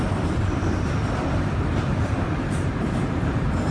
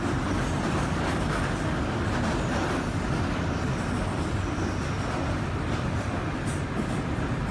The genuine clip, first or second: second